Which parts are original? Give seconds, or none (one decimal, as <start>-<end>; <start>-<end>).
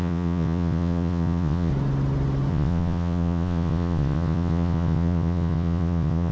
1.7-2.5